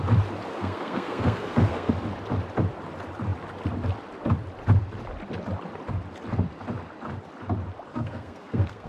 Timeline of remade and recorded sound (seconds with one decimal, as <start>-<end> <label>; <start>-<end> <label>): 0.0-0.5 recorded; 0.5-1.9 remade; 1.9-7.9 recorded; 7.9-8.9 remade